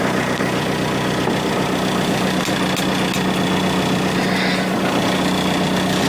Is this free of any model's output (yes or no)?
yes